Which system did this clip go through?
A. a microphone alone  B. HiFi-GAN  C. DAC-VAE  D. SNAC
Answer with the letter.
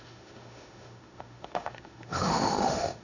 C